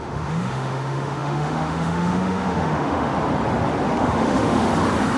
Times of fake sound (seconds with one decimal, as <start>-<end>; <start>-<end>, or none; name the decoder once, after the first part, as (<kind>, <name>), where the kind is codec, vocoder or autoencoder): 0.0-3.1 (autoencoder, DAC-VAE); 3.9-4.7